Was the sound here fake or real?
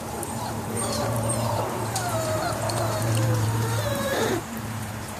fake